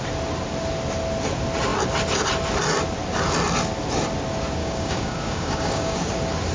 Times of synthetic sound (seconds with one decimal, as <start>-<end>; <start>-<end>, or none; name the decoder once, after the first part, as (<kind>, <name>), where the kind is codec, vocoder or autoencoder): 4.6-6.0 (codec, DAC)